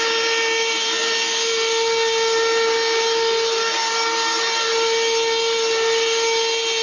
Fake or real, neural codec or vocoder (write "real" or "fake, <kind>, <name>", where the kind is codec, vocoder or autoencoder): real